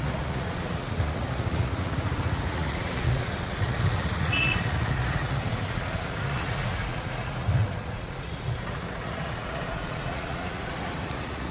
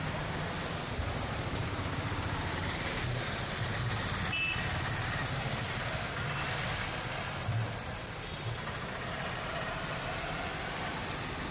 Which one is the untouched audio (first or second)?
second